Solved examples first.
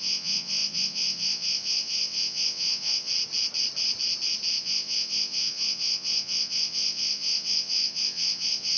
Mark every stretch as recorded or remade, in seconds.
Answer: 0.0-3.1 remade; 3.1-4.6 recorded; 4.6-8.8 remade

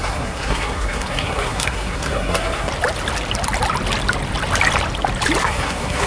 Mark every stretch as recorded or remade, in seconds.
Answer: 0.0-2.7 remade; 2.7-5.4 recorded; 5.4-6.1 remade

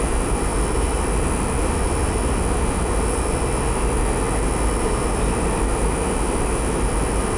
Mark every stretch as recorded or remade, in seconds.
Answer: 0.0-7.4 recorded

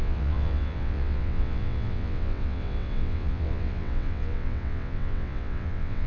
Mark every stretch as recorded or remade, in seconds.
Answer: 0.0-6.1 remade

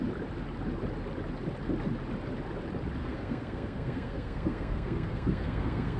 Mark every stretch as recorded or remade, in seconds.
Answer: 0.0-3.0 recorded; 3.0-6.0 remade

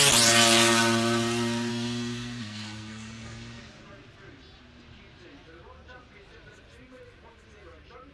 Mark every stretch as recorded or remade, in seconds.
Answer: 0.0-1.7 recorded; 1.7-3.6 remade; 3.6-8.1 recorded